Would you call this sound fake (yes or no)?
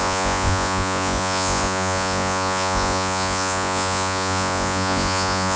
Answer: yes